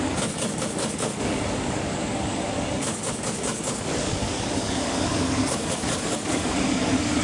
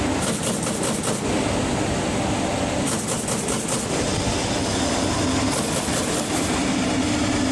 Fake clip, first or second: first